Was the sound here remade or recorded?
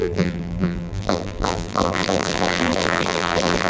remade